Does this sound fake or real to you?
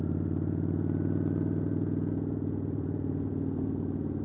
fake